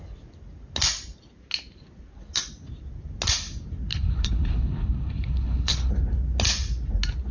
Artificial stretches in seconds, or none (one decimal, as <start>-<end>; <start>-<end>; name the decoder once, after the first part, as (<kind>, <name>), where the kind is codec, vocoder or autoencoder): 3.9-5.9 (codec, HILCodec)